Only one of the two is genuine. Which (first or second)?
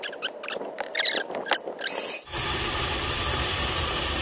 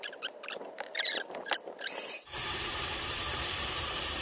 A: first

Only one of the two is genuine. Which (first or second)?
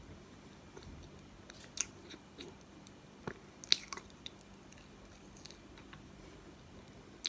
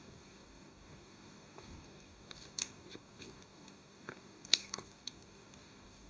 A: first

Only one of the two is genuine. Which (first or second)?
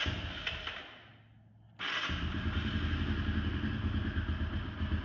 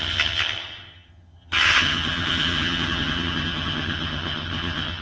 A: first